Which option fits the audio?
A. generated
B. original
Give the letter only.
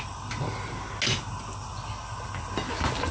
B